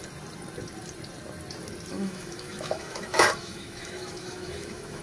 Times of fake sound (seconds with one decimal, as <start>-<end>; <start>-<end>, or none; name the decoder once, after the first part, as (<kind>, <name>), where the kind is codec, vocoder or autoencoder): 1.9-5.0 (autoencoder, DAC-VAE)